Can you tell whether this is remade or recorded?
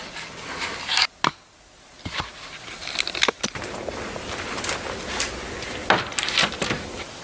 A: recorded